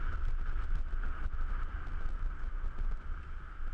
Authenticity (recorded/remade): recorded